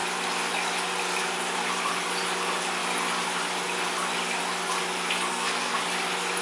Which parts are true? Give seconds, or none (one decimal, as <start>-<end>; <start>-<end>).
0.0-5.3; 5.8-6.4